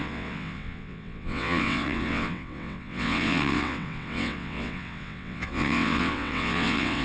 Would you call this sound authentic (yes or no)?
no